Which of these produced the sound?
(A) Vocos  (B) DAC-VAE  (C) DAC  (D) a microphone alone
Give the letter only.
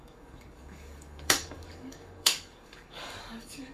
C